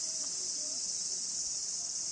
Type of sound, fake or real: real